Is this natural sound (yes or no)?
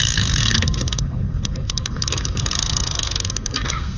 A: no